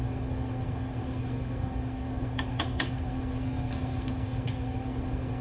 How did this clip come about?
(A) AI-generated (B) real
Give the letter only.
A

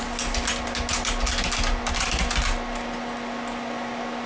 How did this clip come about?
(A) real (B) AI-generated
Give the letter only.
A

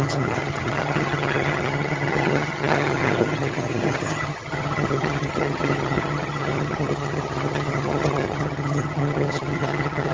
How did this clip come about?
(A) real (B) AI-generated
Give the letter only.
B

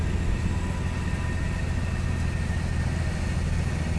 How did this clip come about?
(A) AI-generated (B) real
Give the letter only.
B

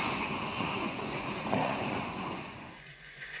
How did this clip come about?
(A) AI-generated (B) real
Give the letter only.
A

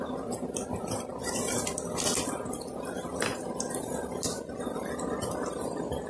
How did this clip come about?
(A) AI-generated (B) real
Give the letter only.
B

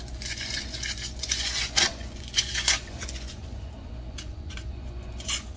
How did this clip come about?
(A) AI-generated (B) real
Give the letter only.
A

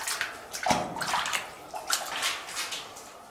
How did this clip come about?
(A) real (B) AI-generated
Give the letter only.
A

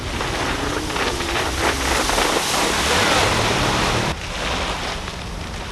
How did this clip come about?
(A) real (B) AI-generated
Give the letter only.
A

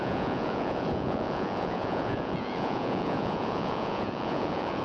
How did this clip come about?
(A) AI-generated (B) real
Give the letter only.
A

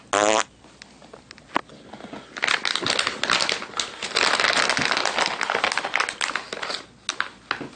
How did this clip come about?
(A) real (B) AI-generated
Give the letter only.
A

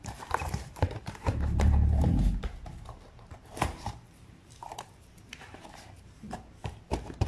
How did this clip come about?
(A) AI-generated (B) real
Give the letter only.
A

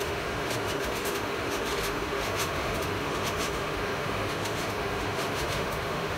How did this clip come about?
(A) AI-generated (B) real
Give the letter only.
A